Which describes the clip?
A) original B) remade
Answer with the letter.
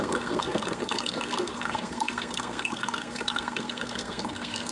B